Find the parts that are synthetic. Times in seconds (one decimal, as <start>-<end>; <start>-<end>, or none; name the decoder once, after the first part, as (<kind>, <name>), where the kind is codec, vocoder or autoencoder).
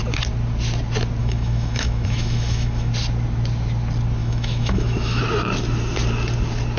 1.2-2.9 (autoencoder, DAC-VAE); 4.2-5.2